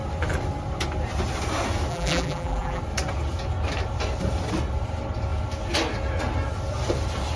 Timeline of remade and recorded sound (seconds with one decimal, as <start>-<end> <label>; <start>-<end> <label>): 0.0-1.9 recorded; 1.9-2.8 remade; 2.8-7.4 recorded